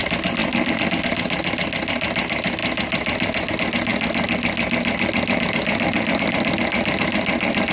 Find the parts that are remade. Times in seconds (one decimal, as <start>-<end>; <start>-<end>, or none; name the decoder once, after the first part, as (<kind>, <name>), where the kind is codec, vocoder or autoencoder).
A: none